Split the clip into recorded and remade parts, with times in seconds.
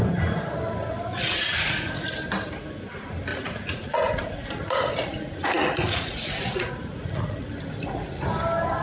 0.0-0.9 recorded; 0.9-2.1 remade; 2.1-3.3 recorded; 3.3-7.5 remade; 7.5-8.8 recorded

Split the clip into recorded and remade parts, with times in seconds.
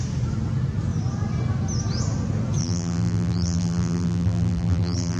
0.0-2.6 recorded; 2.6-5.2 remade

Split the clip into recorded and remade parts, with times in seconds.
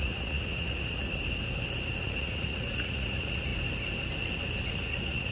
0.0-1.2 remade; 1.2-2.0 recorded; 2.0-3.5 remade; 3.5-4.6 recorded; 4.6-5.3 remade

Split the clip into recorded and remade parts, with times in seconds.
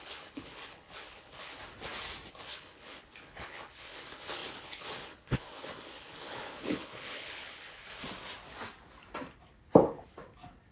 0.0-1.6 remade; 1.6-2.3 recorded; 2.3-7.8 remade; 7.8-10.7 recorded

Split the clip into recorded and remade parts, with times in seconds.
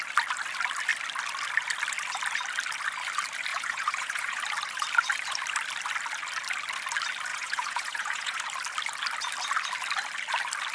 0.0-3.5 recorded; 3.5-4.4 remade; 4.4-7.3 recorded; 7.3-8.4 remade; 8.4-10.7 recorded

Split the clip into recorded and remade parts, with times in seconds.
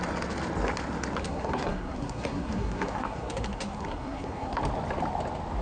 0.0-1.2 recorded; 1.2-4.6 remade; 4.6-5.6 recorded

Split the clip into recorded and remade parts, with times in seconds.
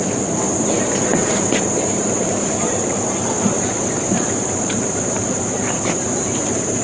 0.0-6.8 remade